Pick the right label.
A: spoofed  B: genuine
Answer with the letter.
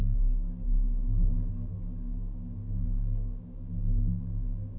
B